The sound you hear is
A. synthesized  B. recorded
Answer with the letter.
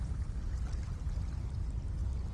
B